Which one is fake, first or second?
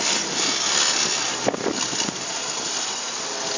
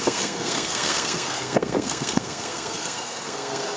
second